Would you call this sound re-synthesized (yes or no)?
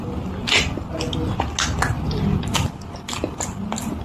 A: no